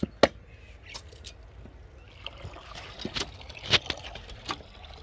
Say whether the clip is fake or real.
real